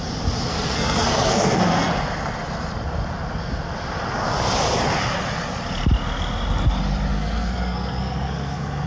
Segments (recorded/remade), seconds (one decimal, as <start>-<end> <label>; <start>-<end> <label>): 0.0-0.5 recorded; 0.5-1.9 remade; 1.9-7.1 recorded; 7.1-8.9 remade

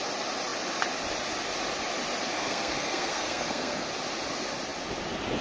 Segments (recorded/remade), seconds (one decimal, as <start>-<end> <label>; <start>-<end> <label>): 0.0-2.3 recorded; 2.3-3.9 remade; 3.9-5.4 recorded

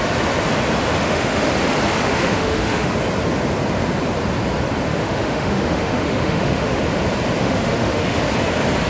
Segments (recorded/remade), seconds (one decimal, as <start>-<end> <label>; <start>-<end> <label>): 0.0-1.0 recorded; 1.0-1.5 remade; 1.5-2.1 recorded; 2.1-2.9 remade; 2.9-4.9 recorded; 4.9-6.8 remade; 6.8-7.4 recorded; 7.4-8.2 remade; 8.2-8.9 recorded

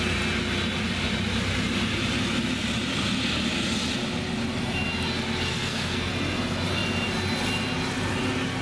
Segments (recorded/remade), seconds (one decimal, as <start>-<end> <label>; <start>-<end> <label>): 0.0-5.5 recorded; 5.5-6.1 remade; 6.1-8.6 recorded

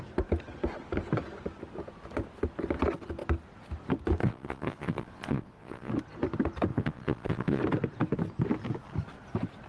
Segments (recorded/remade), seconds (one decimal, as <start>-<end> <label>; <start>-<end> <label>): 0.0-4.2 recorded; 4.2-5.9 remade; 5.9-6.7 recorded; 6.7-7.6 remade; 7.6-9.7 recorded

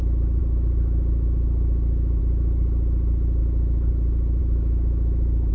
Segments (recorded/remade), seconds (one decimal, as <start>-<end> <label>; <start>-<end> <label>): 0.0-0.4 recorded; 0.4-2.2 remade; 2.2-3.4 recorded; 3.4-3.9 remade; 3.9-4.4 recorded; 4.4-5.5 remade